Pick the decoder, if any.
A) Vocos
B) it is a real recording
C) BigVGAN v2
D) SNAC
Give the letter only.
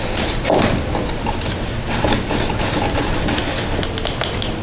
B